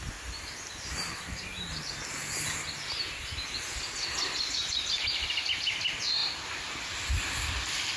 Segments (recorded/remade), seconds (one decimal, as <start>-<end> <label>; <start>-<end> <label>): 0.0-1.5 remade; 1.5-5.0 recorded; 5.0-8.0 remade